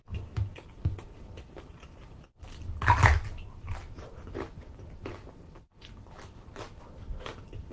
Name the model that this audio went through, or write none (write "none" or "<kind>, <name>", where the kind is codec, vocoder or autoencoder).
none